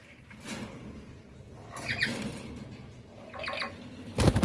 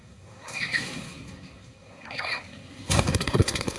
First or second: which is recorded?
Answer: first